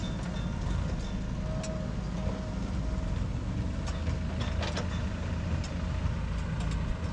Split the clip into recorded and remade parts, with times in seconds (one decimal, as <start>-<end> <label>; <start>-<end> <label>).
0.0-5.0 recorded; 5.0-5.6 remade; 5.6-7.1 recorded